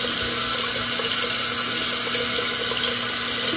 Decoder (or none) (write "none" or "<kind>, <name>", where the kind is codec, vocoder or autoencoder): none